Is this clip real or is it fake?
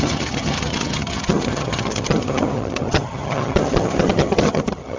fake